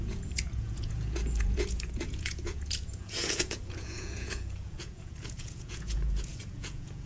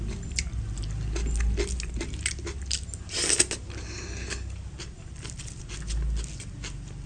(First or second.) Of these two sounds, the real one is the second